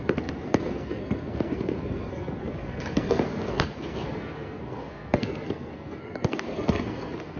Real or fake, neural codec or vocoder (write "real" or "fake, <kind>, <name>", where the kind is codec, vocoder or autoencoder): fake, codec, SNAC